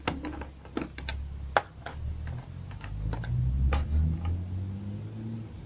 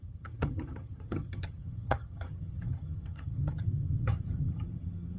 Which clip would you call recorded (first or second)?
first